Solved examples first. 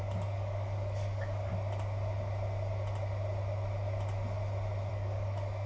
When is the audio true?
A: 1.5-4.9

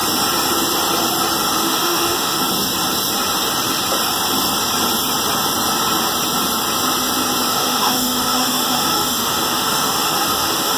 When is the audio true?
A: 0.0-1.6; 2.4-7.5

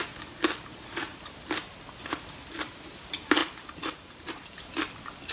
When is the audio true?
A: 0.0-3.4; 4.6-5.3

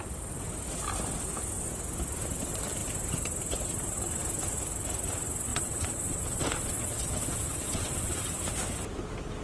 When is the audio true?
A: 0.0-5.5; 8.2-9.4

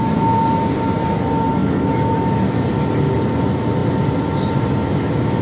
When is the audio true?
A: 0.0-5.4